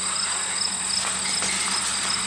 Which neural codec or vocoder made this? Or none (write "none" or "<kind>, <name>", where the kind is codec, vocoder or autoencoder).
none